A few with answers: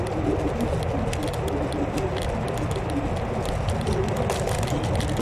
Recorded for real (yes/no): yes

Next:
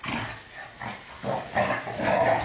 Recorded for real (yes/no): yes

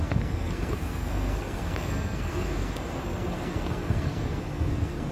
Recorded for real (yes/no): no